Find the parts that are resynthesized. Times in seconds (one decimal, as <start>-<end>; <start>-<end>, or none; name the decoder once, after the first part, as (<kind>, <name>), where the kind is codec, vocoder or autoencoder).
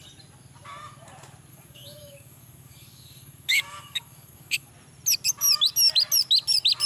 1.5-4.7 (codec, DAC)